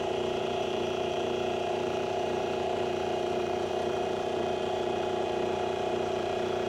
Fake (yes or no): yes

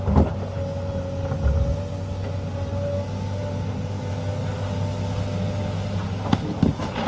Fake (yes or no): no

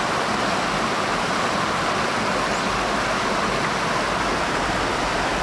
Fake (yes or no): no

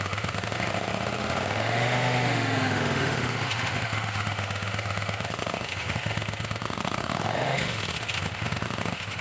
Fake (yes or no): yes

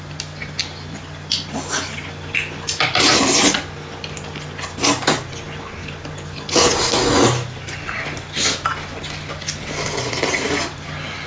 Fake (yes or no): no